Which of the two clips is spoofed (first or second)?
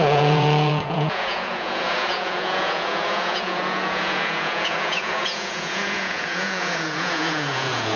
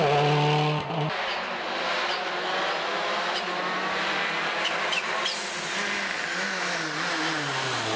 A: first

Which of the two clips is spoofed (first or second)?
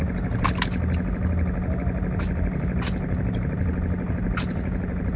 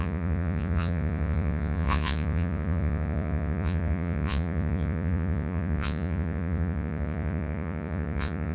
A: second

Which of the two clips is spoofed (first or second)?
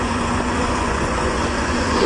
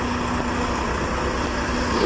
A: first